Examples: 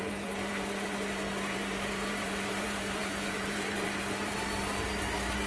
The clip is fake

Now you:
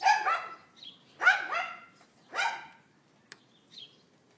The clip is real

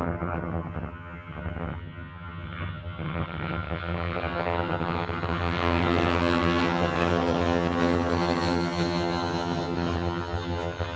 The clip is fake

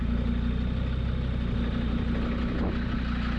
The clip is real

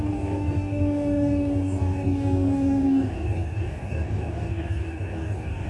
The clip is fake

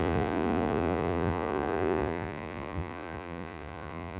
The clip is fake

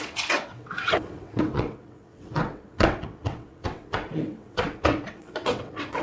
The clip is fake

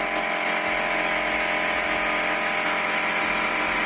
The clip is real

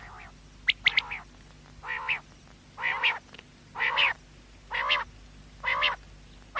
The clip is real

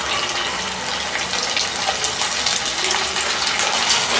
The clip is real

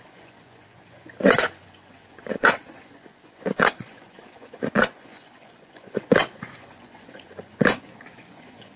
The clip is fake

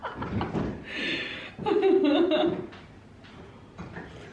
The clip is real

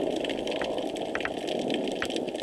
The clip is real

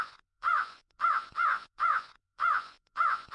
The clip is fake